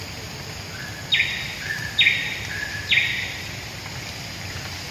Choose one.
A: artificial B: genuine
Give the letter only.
B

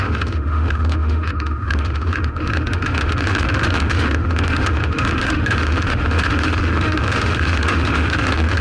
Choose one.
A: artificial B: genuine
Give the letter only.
A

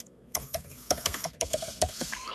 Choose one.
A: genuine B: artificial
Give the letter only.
B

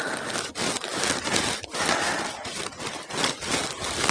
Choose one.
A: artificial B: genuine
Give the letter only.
B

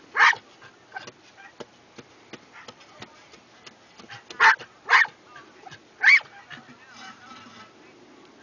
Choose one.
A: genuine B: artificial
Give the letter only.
A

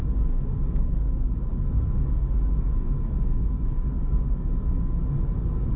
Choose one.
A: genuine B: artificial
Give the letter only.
B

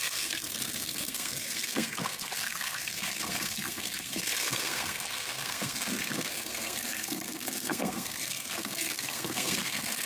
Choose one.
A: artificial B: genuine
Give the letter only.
A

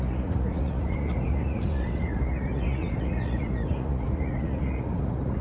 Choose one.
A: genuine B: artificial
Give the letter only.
B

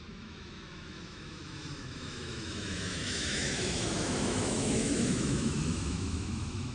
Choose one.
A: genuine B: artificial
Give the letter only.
B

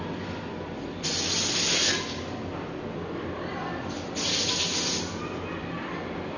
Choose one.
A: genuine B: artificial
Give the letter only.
A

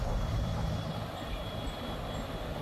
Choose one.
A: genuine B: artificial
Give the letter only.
B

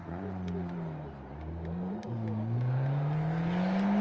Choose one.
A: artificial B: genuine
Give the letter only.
B